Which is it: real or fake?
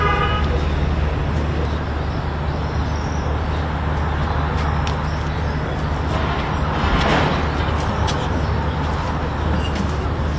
real